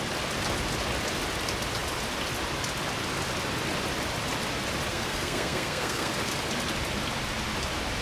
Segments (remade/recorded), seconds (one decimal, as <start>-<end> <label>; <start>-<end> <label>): 0.0-4.9 recorded; 4.9-6.1 remade; 6.1-8.0 recorded